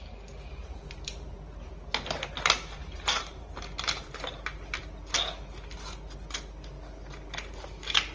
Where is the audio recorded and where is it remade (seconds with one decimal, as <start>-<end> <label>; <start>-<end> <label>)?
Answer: 0.0-0.6 recorded; 0.6-1.7 remade; 1.7-2.8 recorded; 2.8-4.8 remade; 4.8-8.1 recorded